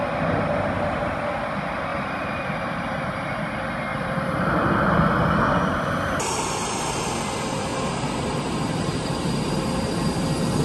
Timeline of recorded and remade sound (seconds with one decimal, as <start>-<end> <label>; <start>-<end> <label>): 0.0-1.9 recorded; 1.9-3.5 remade; 3.5-3.9 recorded; 3.9-6.4 remade; 6.4-7.7 recorded; 7.7-10.1 remade; 10.1-10.6 recorded